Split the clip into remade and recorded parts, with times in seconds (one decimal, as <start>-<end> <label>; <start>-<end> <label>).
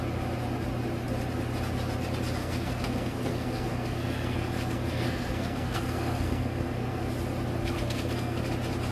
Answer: 0.0-2.4 recorded; 2.4-7.1 remade; 7.1-7.6 recorded; 7.6-8.4 remade; 8.4-8.9 recorded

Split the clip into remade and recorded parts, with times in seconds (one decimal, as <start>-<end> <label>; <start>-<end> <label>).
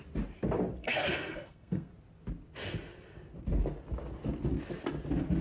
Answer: 0.0-0.8 recorded; 0.8-1.9 remade; 1.9-5.4 recorded